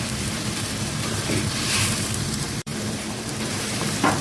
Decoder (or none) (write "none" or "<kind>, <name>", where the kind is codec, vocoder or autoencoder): vocoder, BigVGAN v2